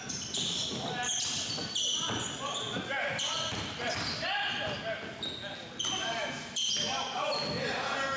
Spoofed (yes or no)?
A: no